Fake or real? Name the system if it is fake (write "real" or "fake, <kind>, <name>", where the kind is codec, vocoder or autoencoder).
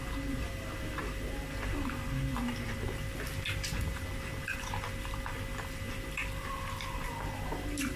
real